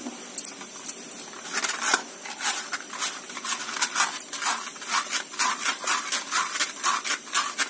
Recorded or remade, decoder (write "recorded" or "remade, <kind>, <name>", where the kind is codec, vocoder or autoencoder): recorded